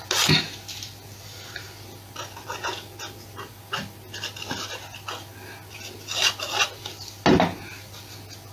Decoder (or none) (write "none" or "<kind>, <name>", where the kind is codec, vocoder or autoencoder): none